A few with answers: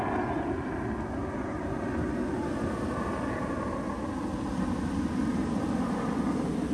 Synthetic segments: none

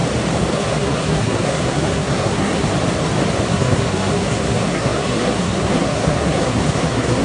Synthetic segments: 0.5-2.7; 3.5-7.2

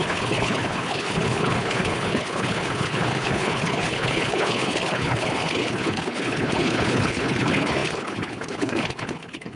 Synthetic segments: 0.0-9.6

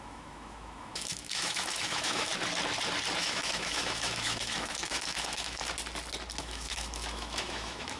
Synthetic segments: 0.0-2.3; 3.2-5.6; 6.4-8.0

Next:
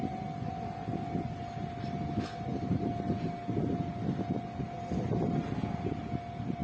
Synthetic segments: none

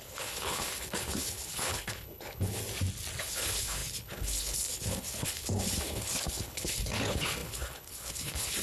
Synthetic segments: 0.0-2.6; 3.2-8.6